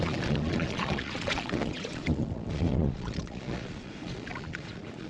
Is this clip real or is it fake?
fake